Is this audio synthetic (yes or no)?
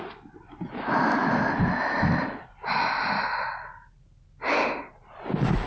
no